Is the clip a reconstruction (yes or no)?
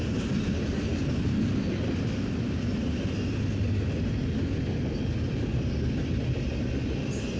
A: no